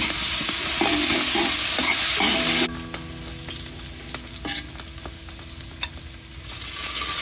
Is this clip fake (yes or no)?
no